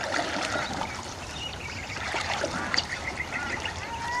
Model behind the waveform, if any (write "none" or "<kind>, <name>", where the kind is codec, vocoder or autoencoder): vocoder, BigVGAN v2